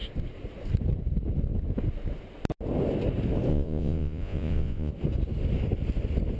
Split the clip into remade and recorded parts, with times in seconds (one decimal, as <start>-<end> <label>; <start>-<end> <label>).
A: 0.0-3.5 recorded; 3.5-4.9 remade; 4.9-6.4 recorded